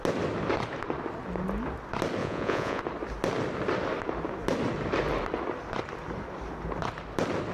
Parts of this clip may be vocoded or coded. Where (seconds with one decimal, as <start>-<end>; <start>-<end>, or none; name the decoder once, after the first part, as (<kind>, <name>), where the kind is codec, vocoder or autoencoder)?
2.2-2.8 (vocoder, Vocos)